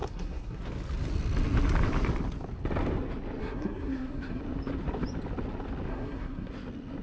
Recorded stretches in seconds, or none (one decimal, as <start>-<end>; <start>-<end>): 0.6-3.4; 4.4-5.9; 6.5-7.0

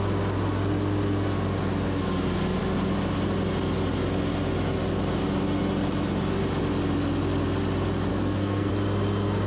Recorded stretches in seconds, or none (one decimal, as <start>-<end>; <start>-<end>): 0.0-8.1; 8.7-9.5

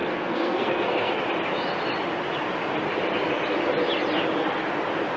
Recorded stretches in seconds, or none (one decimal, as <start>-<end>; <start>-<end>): 1.2-5.2

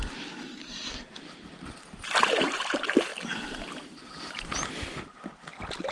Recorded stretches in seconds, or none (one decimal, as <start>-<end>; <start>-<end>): 0.0-0.6; 1.2-5.9

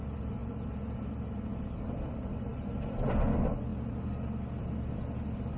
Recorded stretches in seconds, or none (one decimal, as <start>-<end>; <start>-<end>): 0.0-5.6